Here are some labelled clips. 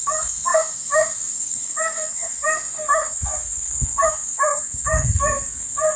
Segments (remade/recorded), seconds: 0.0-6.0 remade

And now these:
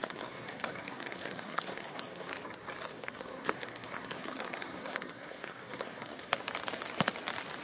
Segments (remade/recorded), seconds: 0.0-2.3 remade; 2.3-2.9 recorded; 2.9-6.4 remade; 6.4-7.6 recorded